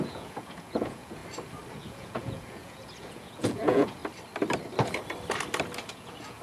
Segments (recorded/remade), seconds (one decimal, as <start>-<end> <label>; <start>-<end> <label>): 0.0-1.2 remade; 1.2-1.7 recorded; 1.7-4.0 remade; 4.0-5.9 recorded; 5.9-6.4 remade

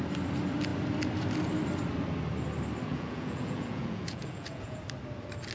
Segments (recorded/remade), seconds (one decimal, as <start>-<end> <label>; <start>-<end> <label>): 0.0-2.9 recorded; 2.9-4.8 remade; 4.8-5.5 recorded

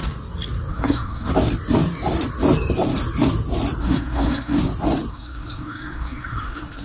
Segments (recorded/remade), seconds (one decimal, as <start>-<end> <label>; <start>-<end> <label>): 0.0-0.7 recorded; 0.7-1.3 remade; 1.3-3.8 recorded; 3.8-4.6 remade; 4.6-5.1 recorded; 5.1-6.8 remade

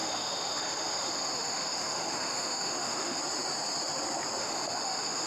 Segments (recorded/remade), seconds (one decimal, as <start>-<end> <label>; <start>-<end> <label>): 0.0-3.2 remade; 3.2-4.4 recorded; 4.4-5.3 remade

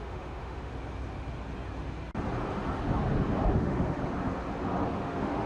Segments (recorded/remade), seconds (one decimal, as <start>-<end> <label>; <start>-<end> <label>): 0.0-0.7 remade; 0.7-3.5 recorded; 3.5-4.0 remade; 4.0-4.9 recorded; 4.9-5.5 remade